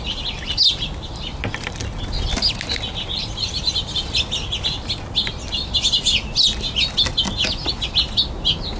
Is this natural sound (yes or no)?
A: yes